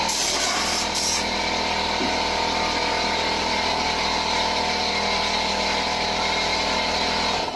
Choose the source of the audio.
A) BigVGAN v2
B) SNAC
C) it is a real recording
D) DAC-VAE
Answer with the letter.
C